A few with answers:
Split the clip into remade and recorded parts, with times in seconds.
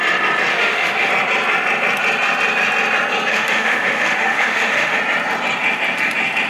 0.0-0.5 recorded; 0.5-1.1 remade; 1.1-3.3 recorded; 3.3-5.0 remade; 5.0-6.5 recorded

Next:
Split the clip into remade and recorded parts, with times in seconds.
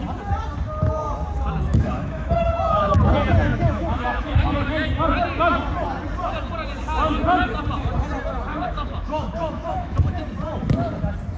0.0-1.7 recorded; 1.7-3.1 remade; 3.1-3.5 recorded; 3.5-4.7 remade; 4.7-8.5 recorded; 8.5-10.2 remade; 10.2-11.4 recorded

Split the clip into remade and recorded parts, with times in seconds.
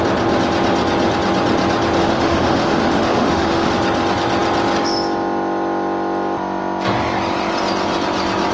0.0-2.0 recorded; 2.0-3.7 remade; 3.7-8.5 recorded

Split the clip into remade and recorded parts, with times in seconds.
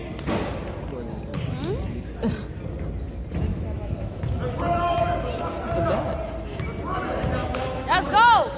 0.0-3.5 recorded; 3.5-4.2 remade; 4.2-7.4 recorded; 7.4-8.1 remade; 8.1-8.6 recorded